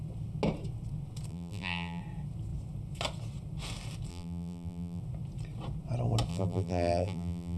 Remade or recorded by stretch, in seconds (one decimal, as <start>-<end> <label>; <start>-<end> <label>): 0.0-1.3 recorded; 1.3-2.0 remade; 2.0-4.1 recorded; 4.1-5.0 remade; 5.0-6.3 recorded; 6.3-7.6 remade

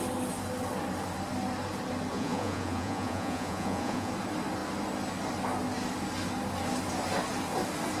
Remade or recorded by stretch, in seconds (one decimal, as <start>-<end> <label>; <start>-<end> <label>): 0.0-2.1 recorded; 2.1-4.1 remade; 4.1-8.0 recorded